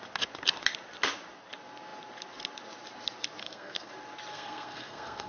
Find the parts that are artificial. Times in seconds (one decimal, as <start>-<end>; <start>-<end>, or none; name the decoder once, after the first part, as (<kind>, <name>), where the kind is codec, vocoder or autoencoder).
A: 3.4-3.9 (codec, SNAC); 4.3-5.3